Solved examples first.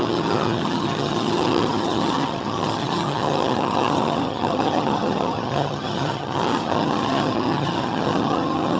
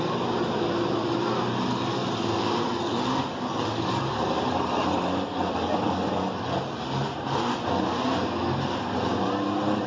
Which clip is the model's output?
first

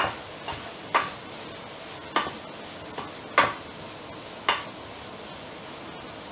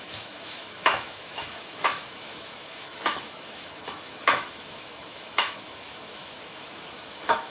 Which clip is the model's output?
second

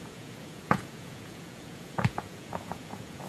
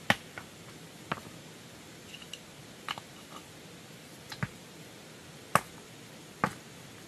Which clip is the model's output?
first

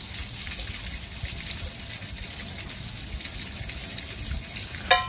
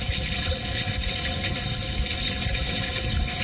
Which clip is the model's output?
second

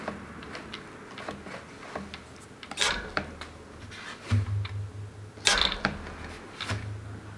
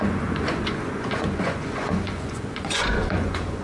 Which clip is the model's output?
second